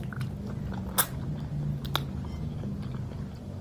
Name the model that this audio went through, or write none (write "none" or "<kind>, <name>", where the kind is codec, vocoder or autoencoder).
none